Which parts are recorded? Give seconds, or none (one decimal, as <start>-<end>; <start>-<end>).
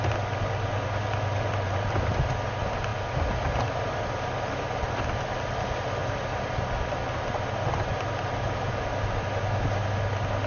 0.0-1.0; 2.1-10.5